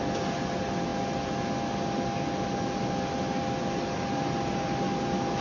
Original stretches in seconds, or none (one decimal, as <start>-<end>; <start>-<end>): 0.0-5.4